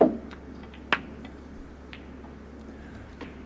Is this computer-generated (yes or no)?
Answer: no